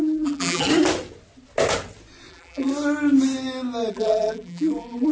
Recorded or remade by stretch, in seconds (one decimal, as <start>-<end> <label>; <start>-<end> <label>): 0.0-0.7 remade; 0.7-2.3 recorded; 2.3-2.7 remade; 2.7-3.9 recorded; 3.9-5.1 remade